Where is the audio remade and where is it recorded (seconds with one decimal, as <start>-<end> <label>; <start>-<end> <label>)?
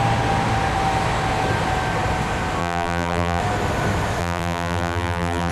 0.0-2.6 recorded; 2.6-3.4 remade; 3.4-4.2 recorded; 4.2-5.5 remade